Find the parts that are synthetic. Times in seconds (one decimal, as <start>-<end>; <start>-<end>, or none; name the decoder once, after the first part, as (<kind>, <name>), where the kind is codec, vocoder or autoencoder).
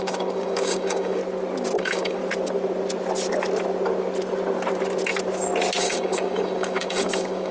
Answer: 0.0-1.2 (codec, DAC); 1.8-2.2; 5.8-7.5